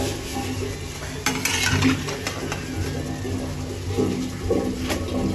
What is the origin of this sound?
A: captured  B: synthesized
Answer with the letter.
A